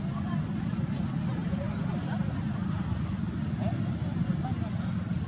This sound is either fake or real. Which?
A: real